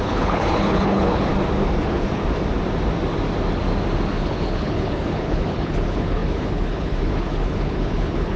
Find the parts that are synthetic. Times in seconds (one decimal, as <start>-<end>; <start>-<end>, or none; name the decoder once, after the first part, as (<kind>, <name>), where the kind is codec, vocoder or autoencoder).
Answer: 0.0-1.3 (codec, HILCodec); 1.8-2.2; 4.1-8.4